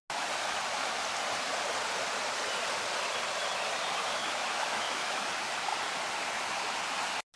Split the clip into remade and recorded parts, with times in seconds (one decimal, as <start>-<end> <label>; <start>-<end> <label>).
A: 0.0-4.2 recorded; 4.2-5.3 remade; 5.3-7.4 recorded